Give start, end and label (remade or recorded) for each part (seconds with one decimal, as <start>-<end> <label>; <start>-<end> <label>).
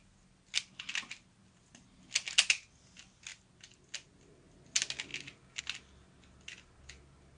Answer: 0.0-7.4 recorded